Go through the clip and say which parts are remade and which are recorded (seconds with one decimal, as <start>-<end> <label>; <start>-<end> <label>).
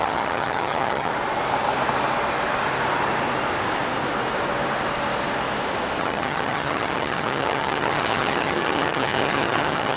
0.0-1.1 remade; 1.1-6.0 recorded; 6.0-10.0 remade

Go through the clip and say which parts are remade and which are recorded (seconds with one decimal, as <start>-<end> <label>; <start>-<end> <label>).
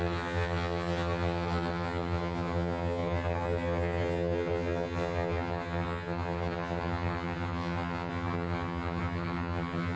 0.0-10.0 remade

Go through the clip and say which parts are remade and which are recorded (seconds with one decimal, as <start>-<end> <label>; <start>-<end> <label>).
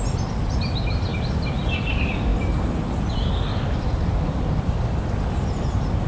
0.0-6.1 recorded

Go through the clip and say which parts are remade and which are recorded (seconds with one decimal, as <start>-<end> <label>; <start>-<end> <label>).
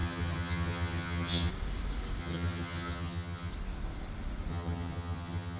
0.0-1.5 remade; 1.5-2.2 recorded; 2.2-3.5 remade; 3.5-4.5 recorded; 4.5-5.6 remade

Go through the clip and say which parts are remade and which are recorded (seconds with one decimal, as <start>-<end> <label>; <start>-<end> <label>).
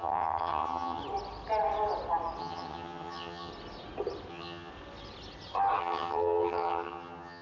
0.0-1.0 remade; 1.0-2.4 recorded; 2.4-3.5 remade; 3.5-4.3 recorded; 4.3-4.7 remade; 4.7-5.8 recorded; 5.8-7.4 remade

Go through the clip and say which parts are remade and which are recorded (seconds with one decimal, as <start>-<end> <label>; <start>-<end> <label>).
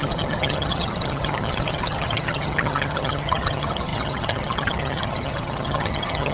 0.0-6.3 remade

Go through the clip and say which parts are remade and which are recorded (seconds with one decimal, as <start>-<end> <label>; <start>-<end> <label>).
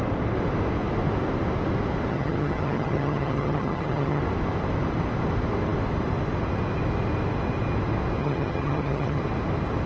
0.0-2.1 recorded; 2.1-4.2 remade; 4.2-8.2 recorded; 8.2-9.2 remade; 9.2-9.9 recorded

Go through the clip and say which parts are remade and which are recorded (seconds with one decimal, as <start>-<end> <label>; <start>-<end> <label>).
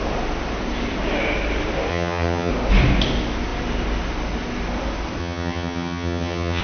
0.0-1.9 recorded; 1.9-2.5 remade; 2.5-5.2 recorded; 5.2-6.6 remade